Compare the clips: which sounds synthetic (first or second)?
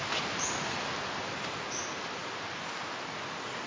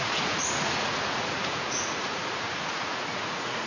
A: second